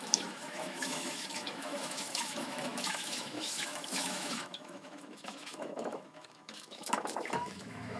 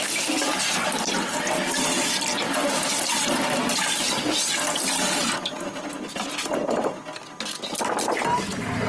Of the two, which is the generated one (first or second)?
first